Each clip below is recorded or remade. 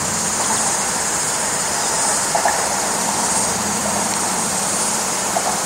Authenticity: remade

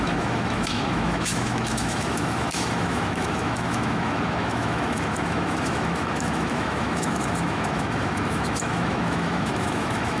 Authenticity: remade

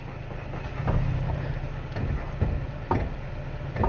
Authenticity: recorded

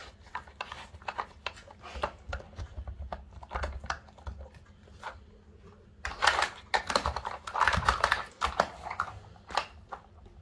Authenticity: recorded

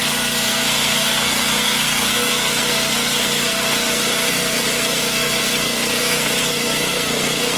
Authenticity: remade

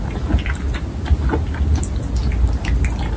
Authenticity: recorded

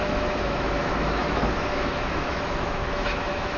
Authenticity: remade